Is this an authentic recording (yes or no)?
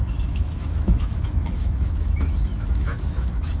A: no